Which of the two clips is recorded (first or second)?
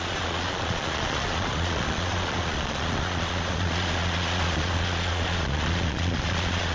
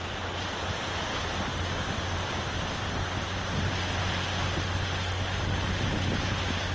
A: second